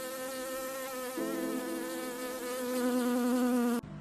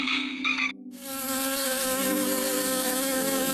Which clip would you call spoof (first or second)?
second